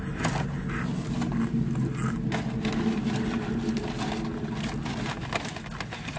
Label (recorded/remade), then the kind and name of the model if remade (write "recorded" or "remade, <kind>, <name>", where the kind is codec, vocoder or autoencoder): recorded